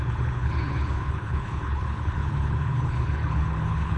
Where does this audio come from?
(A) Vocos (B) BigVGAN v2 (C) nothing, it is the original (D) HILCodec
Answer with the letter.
D